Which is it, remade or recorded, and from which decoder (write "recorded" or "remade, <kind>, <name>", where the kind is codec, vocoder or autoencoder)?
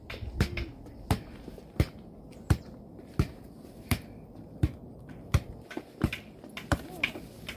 recorded